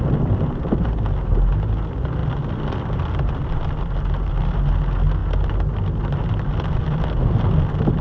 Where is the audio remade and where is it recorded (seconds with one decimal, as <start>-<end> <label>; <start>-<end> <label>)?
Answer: 0.0-2.2 recorded; 2.2-3.3 remade; 3.3-8.0 recorded